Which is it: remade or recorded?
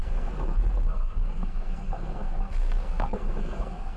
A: remade